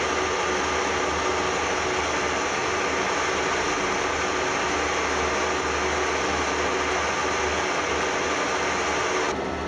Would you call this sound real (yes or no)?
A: yes